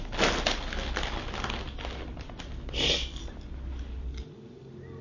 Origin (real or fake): real